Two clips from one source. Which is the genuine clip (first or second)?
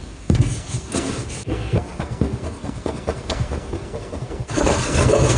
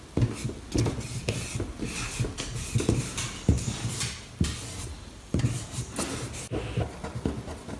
second